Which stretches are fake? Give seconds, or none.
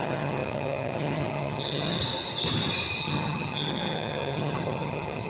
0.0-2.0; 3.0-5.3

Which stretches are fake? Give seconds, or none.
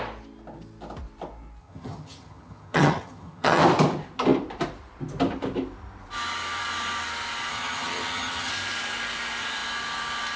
1.6-3.6; 7.5-8.5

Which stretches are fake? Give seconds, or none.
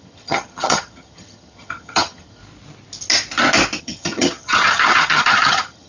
0.0-2.4; 3.8-5.9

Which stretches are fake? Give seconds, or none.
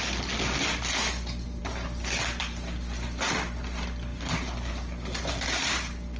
none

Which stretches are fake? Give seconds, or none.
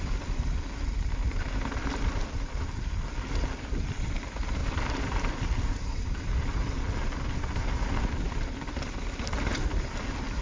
none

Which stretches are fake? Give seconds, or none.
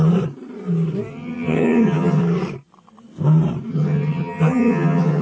1.1-2.2; 3.7-5.2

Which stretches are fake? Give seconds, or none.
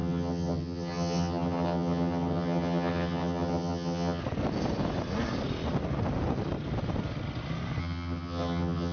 0.0-4.2; 7.8-8.9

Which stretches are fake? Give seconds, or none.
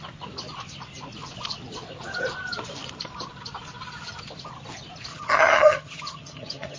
5.1-6.8